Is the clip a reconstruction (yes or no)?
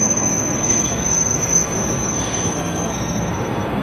yes